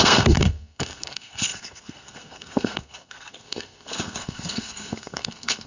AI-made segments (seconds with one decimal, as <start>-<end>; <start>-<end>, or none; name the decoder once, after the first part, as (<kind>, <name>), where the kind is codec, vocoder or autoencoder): 0.0-5.7 (codec, SNAC)